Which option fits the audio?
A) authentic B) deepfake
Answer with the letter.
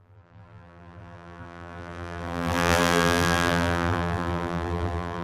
B